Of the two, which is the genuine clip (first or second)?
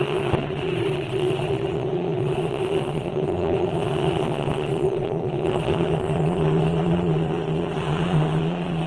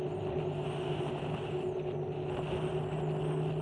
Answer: second